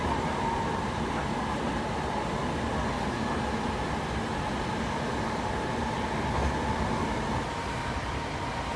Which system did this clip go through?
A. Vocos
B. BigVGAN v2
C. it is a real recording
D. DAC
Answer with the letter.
C